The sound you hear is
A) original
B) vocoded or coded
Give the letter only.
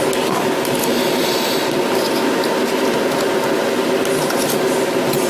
A